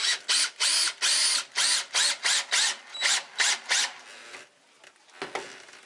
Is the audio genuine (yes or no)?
yes